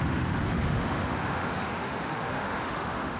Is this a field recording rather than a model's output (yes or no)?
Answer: no